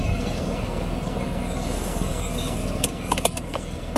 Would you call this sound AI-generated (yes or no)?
yes